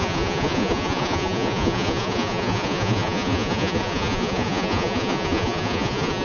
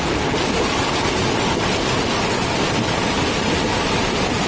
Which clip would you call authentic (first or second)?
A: second